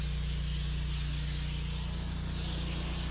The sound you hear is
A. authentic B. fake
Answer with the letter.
A